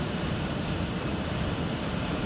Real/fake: fake